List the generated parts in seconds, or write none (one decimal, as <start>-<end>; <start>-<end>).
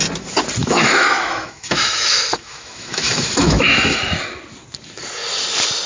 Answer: 0.6-4.0